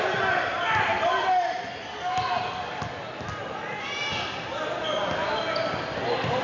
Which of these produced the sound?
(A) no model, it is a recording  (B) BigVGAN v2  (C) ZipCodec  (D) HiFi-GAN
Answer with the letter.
A